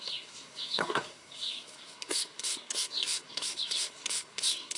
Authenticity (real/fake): fake